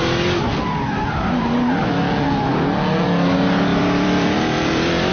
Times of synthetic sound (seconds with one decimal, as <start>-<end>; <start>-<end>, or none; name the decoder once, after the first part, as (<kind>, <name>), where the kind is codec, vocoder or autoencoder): 3.7-5.1 (vocoder, BigVGAN v2)